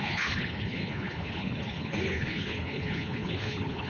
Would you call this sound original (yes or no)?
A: no